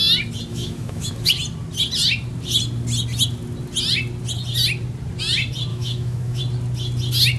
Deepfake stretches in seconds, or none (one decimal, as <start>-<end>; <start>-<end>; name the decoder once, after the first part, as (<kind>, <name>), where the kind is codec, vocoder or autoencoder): 0.5-1.3 (autoencoder, DAC-VAE); 5.7-6.4